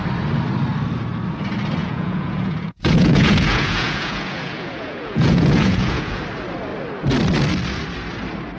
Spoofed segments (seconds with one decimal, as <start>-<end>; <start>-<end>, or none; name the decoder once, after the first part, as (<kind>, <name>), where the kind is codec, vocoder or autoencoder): 1.8-6.2 (vocoder, Vocos)